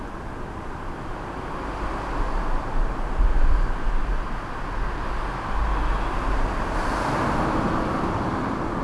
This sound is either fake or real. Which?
real